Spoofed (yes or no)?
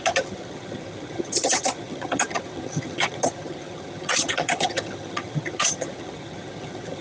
yes